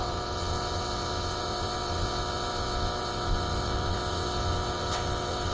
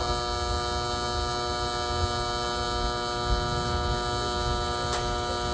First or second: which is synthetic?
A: first